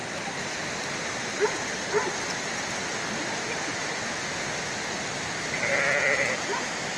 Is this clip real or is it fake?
real